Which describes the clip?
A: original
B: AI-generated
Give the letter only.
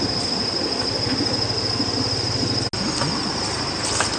A